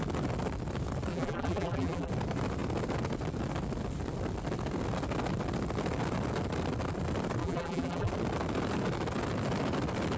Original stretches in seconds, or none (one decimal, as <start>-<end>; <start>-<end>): 0.0-1.1; 2.1-7.4; 8.1-10.2